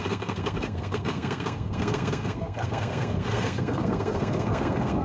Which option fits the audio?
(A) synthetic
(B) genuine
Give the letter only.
A